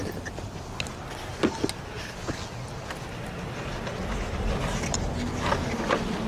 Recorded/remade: recorded